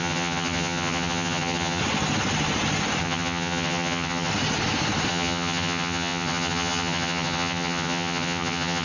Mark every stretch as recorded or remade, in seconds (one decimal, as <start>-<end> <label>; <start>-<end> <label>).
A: 0.0-1.8 remade; 1.8-3.0 recorded; 3.0-4.3 remade; 4.3-5.1 recorded; 5.1-8.8 remade

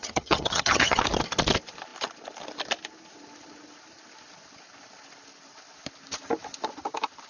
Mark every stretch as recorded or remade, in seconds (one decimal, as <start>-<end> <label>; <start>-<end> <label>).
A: 0.0-1.0 remade; 1.0-7.3 recorded

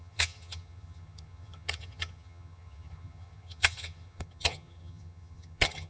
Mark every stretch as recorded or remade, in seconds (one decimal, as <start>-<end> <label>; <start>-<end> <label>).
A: 0.0-5.9 remade

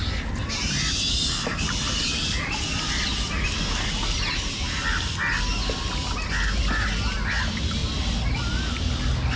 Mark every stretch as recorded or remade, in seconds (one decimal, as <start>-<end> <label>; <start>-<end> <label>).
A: 0.0-9.4 recorded

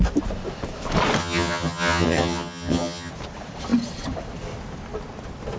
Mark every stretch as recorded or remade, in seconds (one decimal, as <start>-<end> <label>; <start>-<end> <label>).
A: 0.0-1.2 recorded; 1.2-3.1 remade; 3.1-5.6 recorded

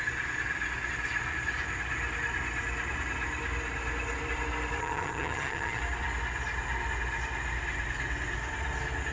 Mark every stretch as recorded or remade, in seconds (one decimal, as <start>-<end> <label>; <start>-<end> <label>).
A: 0.0-4.8 recorded; 4.8-5.8 remade; 5.8-9.1 recorded

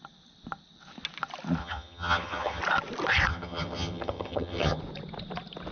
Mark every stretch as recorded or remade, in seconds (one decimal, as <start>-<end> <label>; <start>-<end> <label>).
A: 0.0-1.6 recorded; 1.6-2.6 remade; 2.6-3.3 recorded; 3.3-4.8 remade; 4.8-5.7 recorded